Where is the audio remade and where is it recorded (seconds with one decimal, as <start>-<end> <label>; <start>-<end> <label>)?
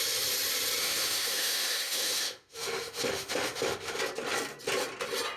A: 0.0-0.8 recorded; 0.8-4.0 remade; 4.0-5.4 recorded